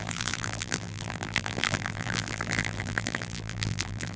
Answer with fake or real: fake